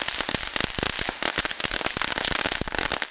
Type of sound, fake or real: real